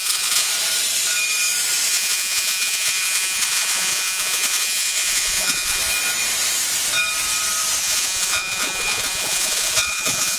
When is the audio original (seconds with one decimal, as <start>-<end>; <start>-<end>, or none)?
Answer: 0.5-1.9; 5.8-7.8